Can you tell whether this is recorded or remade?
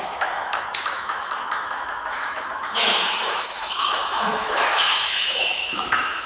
remade